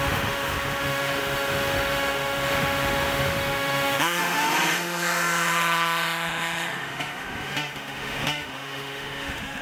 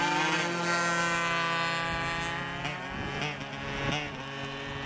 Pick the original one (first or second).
second